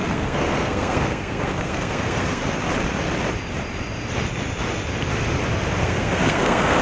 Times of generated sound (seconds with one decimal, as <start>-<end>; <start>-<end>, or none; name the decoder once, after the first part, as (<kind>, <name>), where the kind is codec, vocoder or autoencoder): 0.0-2.4 (codec, SNAC); 5.8-6.8